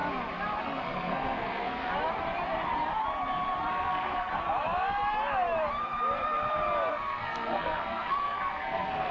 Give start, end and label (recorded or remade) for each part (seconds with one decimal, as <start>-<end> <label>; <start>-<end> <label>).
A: 0.0-0.6 recorded; 0.6-1.9 remade; 1.9-3.7 recorded; 3.7-4.3 remade; 4.3-6.9 recorded; 6.9-9.1 remade